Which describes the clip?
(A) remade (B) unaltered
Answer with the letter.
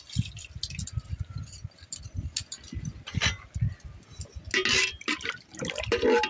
B